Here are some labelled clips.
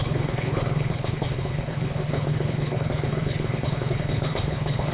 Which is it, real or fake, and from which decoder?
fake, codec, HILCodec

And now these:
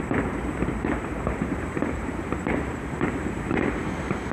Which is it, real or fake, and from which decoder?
fake, vocoder, BigVGAN v2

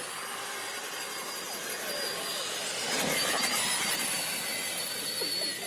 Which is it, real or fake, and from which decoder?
fake, vocoder, BigVGAN v2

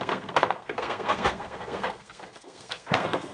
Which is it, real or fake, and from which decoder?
fake, codec, SNAC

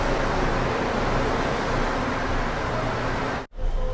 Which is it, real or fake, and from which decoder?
real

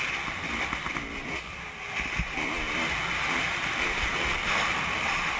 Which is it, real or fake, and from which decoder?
real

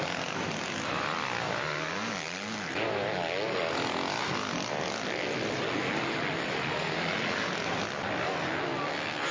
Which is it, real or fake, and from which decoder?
real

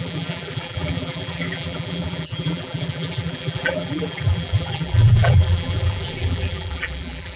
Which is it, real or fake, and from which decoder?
fake, vocoder, BigVGAN v2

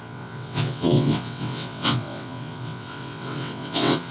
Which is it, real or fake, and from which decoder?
fake, vocoder, WaveNeXt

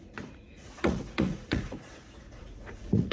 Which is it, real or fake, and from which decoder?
fake, vocoder, Vocos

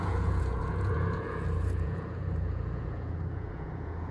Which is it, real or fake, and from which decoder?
fake, vocoder, Vocos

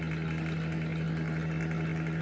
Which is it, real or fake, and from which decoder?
real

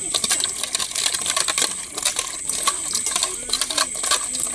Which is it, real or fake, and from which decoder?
real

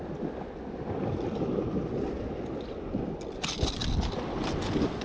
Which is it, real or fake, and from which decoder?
real